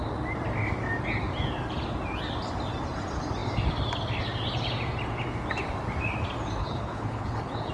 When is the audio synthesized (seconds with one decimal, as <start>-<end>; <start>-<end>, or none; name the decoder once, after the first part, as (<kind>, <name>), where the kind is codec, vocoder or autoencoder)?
6.6-7.7 (codec, HILCodec)